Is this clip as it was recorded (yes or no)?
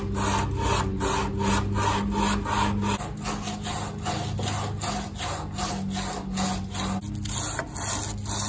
yes